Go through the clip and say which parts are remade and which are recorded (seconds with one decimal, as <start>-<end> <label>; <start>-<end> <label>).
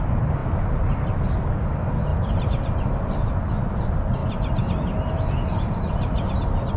0.0-6.8 recorded